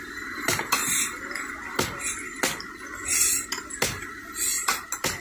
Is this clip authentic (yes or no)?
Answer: yes